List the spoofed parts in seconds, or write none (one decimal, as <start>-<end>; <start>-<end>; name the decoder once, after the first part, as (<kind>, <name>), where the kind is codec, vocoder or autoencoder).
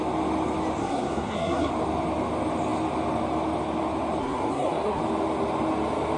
0.8-1.7 (codec, SNAC); 4.2-5.0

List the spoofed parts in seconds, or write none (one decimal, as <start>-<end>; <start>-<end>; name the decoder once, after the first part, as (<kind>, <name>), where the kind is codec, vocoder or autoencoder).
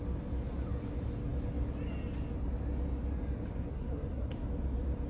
3.7-4.3 (codec, SNAC)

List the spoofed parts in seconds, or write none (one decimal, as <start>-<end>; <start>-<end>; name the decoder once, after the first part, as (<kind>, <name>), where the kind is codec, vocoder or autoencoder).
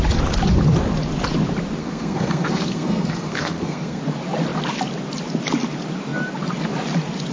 1.8-4.0 (codec, SNAC)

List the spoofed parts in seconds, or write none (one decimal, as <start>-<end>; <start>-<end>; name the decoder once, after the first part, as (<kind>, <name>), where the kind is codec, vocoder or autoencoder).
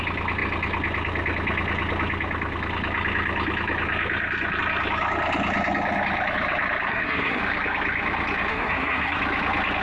6.9-7.4 (codec, SNAC); 8.5-9.2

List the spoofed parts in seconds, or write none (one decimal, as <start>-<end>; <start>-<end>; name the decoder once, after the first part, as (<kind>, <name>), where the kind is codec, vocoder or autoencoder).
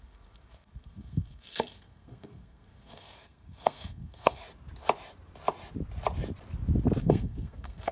0.0-4.4 (codec, SNAC); 7.0-7.9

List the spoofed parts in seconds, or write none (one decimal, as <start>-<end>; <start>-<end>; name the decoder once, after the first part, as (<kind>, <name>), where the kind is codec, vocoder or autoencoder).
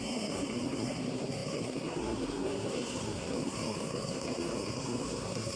0.0-5.6 (codec, SNAC)